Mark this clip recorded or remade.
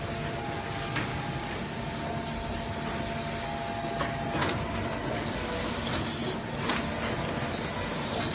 recorded